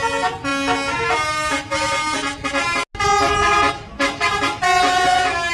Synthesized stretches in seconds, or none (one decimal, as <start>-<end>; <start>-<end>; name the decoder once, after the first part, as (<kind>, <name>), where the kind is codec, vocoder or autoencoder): none